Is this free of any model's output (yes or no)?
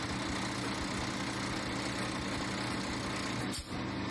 yes